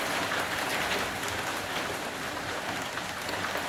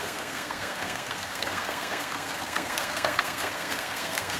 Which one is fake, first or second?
second